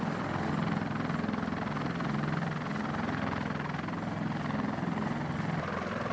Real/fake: real